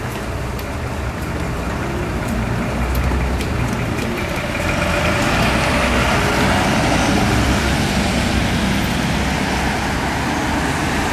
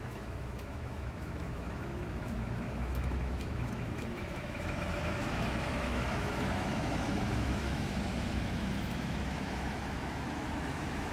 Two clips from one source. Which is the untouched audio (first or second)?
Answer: first